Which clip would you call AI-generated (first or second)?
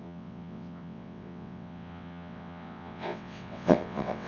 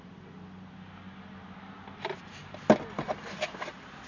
first